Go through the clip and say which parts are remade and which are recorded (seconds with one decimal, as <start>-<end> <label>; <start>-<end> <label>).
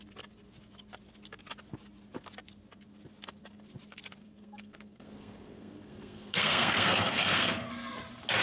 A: 0.0-4.2 recorded; 4.2-7.7 remade; 7.7-8.4 recorded